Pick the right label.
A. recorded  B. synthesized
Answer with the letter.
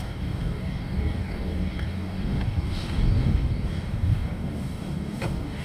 B